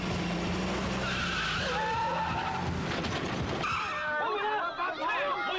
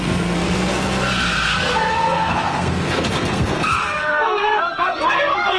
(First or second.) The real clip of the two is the first